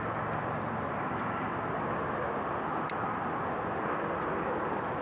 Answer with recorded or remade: recorded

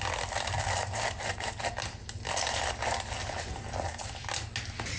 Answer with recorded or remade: recorded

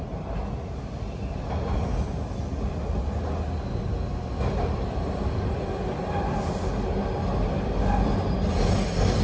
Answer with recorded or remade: recorded